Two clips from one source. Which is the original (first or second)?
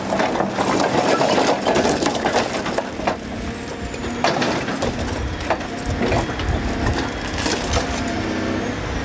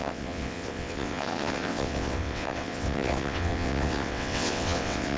first